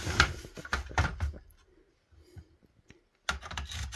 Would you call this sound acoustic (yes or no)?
yes